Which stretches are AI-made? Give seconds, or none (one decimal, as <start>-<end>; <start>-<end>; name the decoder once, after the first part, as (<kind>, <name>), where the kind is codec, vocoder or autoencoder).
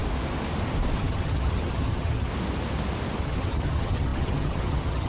1.0-2.3 (vocoder, HiFi-GAN); 3.2-5.1